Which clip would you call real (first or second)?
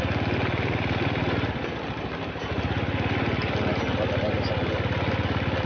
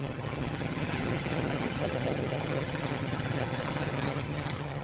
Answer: first